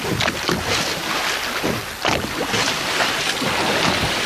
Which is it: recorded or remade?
recorded